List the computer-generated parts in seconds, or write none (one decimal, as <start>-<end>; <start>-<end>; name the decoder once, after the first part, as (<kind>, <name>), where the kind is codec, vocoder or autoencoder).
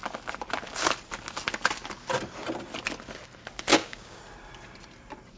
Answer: 3.7-4.2 (codec, DAC)